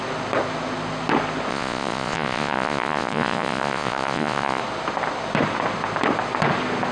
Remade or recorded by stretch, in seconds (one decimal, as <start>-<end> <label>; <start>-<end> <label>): 0.0-1.5 recorded; 1.5-4.6 remade; 4.6-6.9 recorded